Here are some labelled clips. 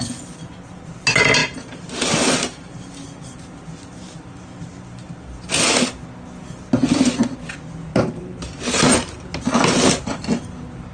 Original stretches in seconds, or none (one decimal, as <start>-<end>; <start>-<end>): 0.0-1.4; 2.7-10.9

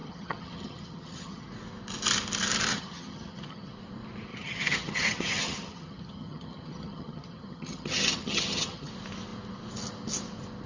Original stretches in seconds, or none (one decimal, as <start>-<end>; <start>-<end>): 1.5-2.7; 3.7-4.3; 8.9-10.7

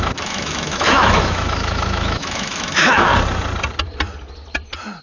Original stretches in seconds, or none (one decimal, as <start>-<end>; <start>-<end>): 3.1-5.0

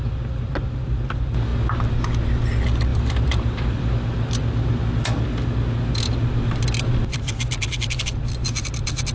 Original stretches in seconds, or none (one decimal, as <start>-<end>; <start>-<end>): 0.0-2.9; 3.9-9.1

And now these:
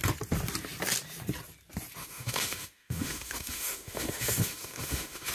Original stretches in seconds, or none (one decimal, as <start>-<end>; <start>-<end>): 0.0-2.0

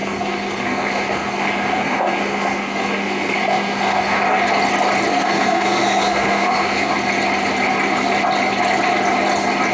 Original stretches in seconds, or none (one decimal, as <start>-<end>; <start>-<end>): 4.2-5.1; 6.9-9.7

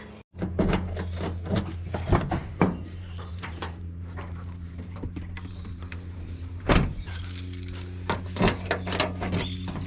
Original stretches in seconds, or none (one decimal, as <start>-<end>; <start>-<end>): 0.0-2.4; 7.2-9.9